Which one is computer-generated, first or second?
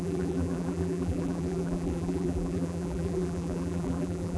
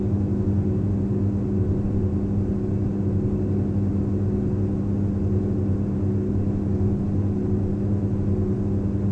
first